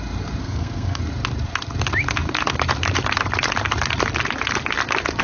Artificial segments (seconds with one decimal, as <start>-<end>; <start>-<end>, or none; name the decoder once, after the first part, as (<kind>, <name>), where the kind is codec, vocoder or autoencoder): 0.4-1.0 (codec, SNAC)